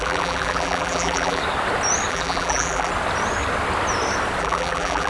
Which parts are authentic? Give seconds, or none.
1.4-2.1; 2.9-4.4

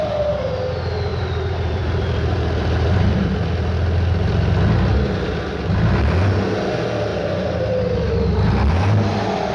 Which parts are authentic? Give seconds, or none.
0.0-1.1; 3.3-9.5

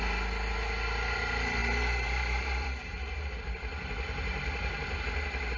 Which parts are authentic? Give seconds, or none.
0.0-1.6; 5.0-5.6